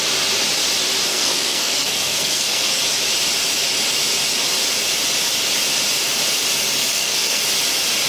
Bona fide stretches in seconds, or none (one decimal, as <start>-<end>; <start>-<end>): 0.0-1.1; 2.8-6.9; 7.4-8.1